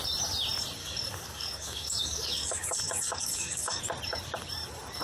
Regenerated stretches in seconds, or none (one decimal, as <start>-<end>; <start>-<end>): 0.8-3.8